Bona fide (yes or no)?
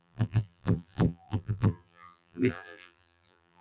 no